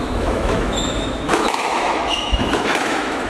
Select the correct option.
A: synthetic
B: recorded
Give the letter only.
A